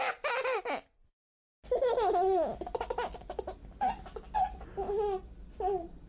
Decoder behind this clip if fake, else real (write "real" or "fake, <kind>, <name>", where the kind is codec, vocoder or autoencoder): real